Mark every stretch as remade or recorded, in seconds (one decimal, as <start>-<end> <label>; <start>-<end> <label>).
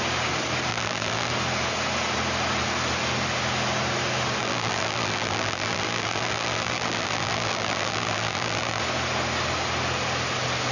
0.0-0.7 recorded; 0.7-1.3 remade; 1.3-4.4 recorded; 4.4-8.8 remade; 8.8-10.7 recorded